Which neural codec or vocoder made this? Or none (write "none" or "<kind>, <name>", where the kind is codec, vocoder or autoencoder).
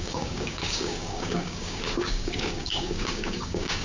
codec, DAC